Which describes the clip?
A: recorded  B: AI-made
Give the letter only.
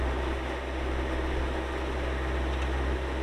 A